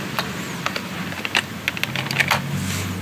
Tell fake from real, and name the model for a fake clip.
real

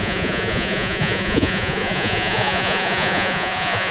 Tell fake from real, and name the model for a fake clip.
fake, vocoder, Vocos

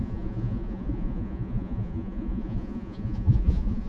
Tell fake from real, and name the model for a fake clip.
fake, vocoder, Vocos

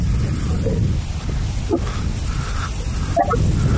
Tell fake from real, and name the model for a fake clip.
real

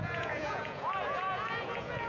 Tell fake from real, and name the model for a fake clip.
fake, vocoder, Vocos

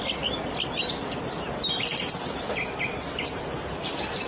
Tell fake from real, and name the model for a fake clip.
real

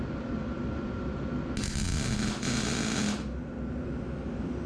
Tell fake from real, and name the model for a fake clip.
real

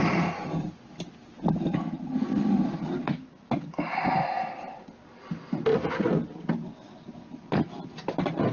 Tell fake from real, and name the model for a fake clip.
real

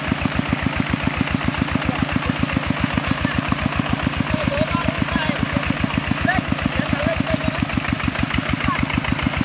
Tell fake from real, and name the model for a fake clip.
real